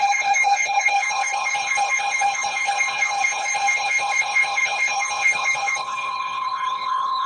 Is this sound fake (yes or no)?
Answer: yes